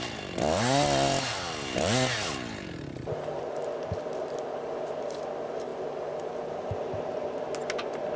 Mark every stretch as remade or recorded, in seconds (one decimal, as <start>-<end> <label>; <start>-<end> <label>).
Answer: 0.0-8.2 recorded